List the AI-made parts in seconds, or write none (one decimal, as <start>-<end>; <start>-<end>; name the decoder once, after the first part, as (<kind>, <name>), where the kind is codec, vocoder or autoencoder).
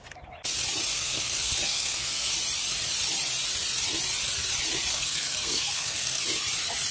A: 0.9-2.3 (codec, SNAC); 4.9-6.2